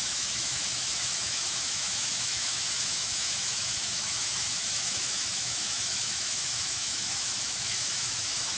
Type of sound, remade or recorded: remade